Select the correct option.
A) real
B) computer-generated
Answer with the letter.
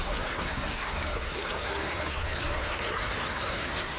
B